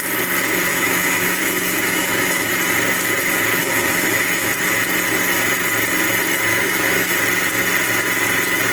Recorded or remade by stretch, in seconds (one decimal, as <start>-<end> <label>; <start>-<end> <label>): 0.0-0.7 recorded; 0.7-2.5 remade; 2.5-3.6 recorded; 3.6-4.5 remade; 4.5-6.5 recorded; 6.5-7.1 remade; 7.1-8.7 recorded